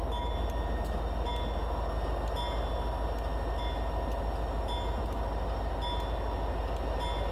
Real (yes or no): yes